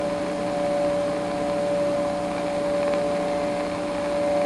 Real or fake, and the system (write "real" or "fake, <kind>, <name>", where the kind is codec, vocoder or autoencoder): real